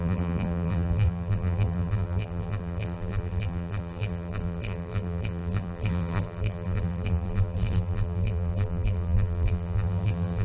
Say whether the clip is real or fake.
fake